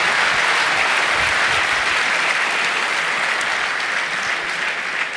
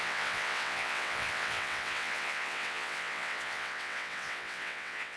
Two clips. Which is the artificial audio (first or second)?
second